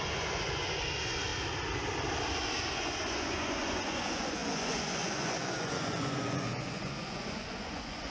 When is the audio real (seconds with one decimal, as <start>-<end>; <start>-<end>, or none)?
1.3-2.7